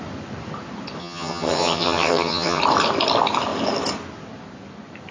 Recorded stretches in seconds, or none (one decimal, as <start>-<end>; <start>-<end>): 0.0-1.0; 2.6-5.1